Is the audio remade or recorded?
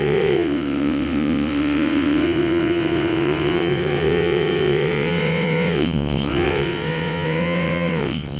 remade